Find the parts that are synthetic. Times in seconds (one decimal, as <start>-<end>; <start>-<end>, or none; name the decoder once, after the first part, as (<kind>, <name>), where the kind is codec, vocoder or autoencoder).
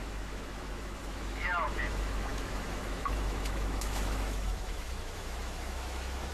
0.0-6.3 (autoencoder, DAC-VAE)